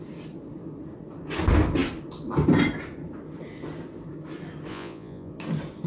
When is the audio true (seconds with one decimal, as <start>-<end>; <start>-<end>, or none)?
0.0-4.7; 5.3-5.9